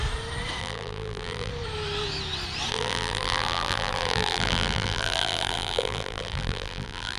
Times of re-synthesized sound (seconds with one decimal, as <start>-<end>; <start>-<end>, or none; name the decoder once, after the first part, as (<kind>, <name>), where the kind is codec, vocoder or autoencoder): 0.6-1.5 (vocoder, BigVGAN v2); 2.7-7.2